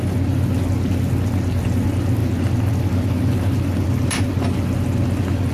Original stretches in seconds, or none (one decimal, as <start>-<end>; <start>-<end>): 0.0-5.5